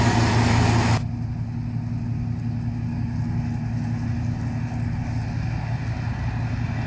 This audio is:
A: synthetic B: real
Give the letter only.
B